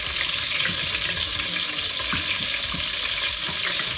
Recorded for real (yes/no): yes